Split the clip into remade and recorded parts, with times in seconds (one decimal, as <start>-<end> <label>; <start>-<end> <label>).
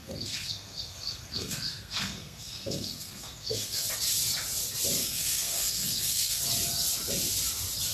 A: 0.0-3.9 remade; 3.9-5.0 recorded; 5.0-6.4 remade; 6.4-7.9 recorded